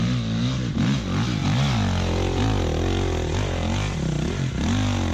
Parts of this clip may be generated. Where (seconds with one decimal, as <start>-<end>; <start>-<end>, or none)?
none